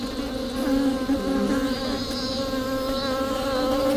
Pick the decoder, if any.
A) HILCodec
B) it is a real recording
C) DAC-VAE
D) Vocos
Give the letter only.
B